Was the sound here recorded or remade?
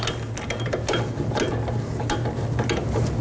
recorded